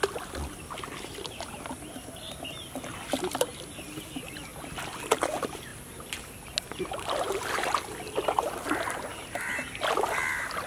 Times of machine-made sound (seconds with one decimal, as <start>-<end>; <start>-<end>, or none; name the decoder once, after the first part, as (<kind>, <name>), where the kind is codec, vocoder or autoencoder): none